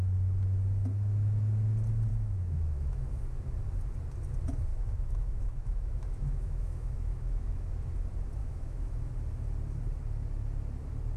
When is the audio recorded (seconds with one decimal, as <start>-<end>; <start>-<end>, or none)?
0.0-2.1; 3.0-4.7; 7.7-8.4; 9.1-11.2